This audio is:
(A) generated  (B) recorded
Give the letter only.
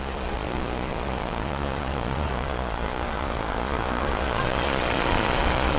A